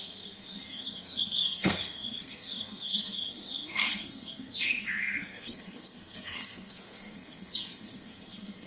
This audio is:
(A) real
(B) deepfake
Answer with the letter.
B